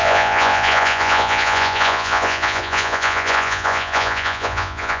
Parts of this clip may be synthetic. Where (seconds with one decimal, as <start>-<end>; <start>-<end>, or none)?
0.0-5.0